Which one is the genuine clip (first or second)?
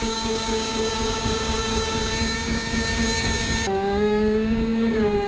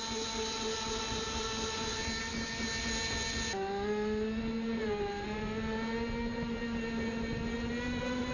second